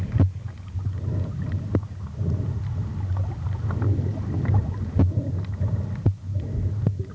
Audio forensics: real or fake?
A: real